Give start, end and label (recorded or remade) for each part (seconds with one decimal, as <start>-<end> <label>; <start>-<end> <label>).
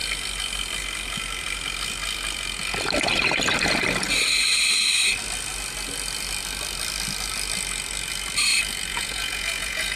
0.0-8.9 recorded; 8.9-10.0 remade